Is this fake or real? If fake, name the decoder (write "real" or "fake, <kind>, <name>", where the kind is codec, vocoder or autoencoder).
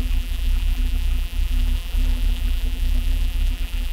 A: fake, vocoder, BigVGAN v2